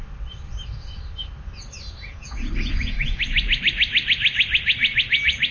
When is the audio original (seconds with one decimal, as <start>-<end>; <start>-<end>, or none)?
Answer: 0.0-2.1; 3.2-5.5

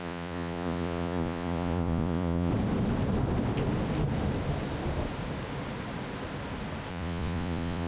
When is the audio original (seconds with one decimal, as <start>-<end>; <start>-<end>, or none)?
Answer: 2.5-6.9